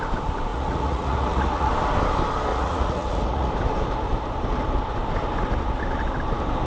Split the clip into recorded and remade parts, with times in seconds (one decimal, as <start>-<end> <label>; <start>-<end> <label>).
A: 0.0-0.5 recorded; 0.5-1.7 remade; 1.7-2.5 recorded; 2.5-3.5 remade; 3.5-6.7 recorded